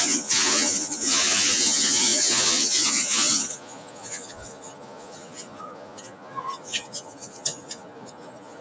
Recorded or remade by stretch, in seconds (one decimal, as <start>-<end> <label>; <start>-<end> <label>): 0.0-8.6 remade